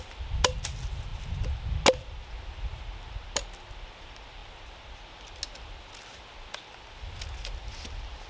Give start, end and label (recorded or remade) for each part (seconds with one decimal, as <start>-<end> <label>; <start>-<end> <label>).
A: 0.0-8.3 recorded